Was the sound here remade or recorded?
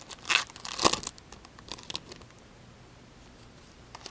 recorded